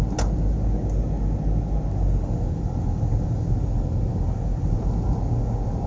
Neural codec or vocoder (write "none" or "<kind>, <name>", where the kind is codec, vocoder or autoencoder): none